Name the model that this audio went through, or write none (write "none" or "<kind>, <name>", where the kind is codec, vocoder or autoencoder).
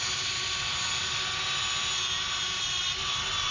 none